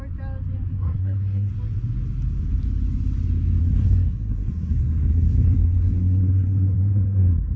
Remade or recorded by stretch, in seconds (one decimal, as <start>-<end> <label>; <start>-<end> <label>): 0.0-0.7 recorded; 0.7-1.5 remade; 1.5-3.6 recorded; 3.6-7.6 remade